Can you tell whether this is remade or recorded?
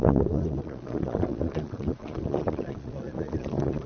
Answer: remade